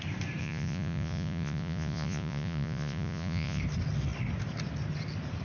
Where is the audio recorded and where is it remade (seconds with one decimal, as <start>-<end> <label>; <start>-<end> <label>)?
0.0-0.4 recorded; 0.4-3.6 remade; 3.6-5.4 recorded